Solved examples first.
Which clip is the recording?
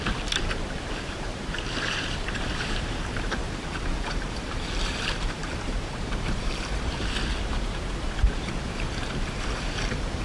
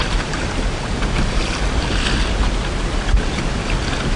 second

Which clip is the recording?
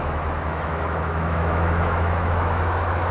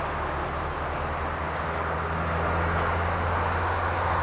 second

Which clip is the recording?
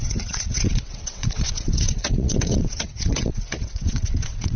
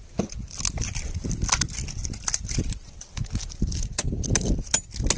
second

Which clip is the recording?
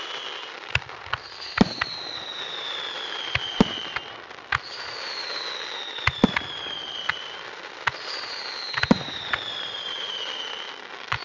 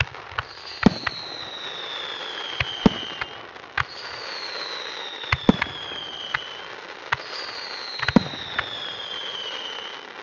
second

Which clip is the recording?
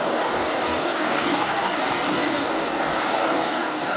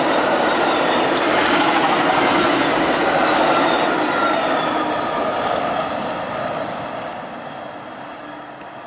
second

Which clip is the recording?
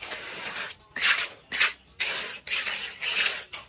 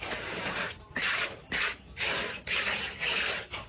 first